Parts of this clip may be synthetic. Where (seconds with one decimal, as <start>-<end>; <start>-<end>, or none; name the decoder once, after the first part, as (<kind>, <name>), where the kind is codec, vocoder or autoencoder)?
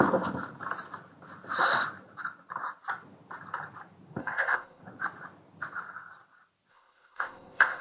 4.2-4.8 (codec, ZipCodec); 6.7-7.8